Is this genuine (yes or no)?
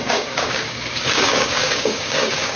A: no